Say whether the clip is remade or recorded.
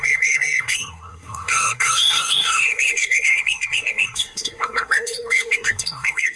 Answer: remade